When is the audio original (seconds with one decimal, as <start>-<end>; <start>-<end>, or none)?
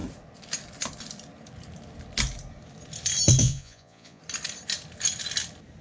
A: 0.0-3.4; 4.2-5.8